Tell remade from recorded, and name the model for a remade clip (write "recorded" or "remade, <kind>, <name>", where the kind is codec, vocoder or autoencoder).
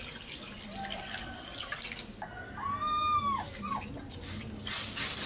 recorded